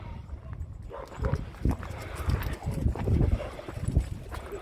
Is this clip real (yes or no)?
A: yes